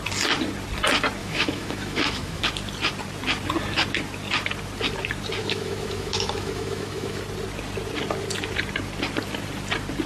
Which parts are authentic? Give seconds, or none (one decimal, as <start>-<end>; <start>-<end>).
0.0-1.2; 2.5-5.4; 7.2-10.1